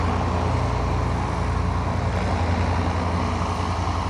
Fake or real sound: real